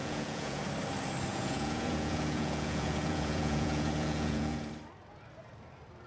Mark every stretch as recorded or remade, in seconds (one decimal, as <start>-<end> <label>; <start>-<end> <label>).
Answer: 0.0-0.6 remade; 0.6-1.3 recorded; 1.3-4.7 remade; 4.7-6.1 recorded